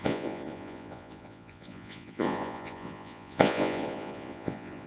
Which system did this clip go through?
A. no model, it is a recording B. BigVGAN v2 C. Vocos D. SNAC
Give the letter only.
C